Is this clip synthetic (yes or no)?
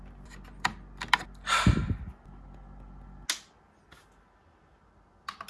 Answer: no